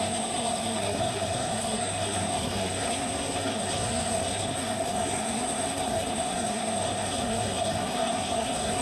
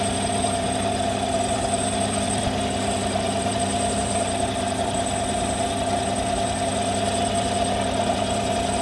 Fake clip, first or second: first